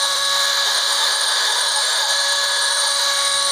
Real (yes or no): no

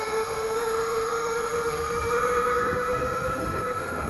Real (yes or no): no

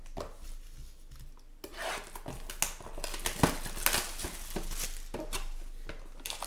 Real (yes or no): yes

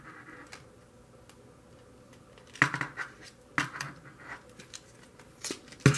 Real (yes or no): yes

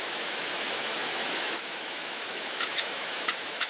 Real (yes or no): no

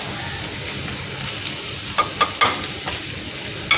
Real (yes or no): yes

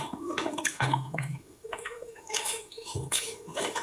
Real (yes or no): no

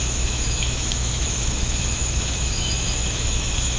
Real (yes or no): no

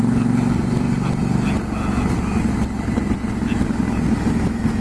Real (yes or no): yes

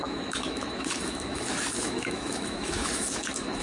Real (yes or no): no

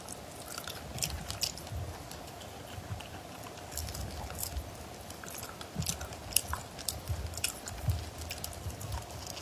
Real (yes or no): yes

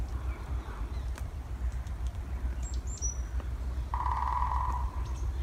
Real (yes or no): yes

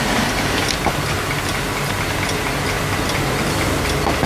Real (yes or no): yes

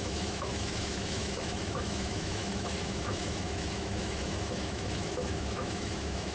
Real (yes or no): no